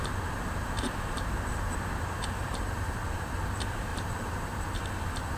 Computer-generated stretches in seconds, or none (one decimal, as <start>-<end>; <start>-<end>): 0.0-5.4